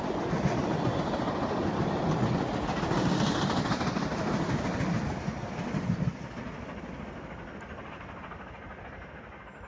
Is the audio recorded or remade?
recorded